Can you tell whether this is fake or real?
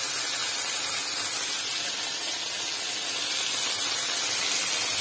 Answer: real